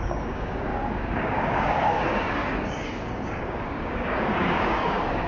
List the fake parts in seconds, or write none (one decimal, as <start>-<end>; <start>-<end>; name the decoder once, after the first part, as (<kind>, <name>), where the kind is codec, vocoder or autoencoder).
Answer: 0.0-5.3 (codec, DAC)